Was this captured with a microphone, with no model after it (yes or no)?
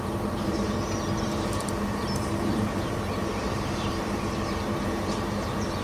no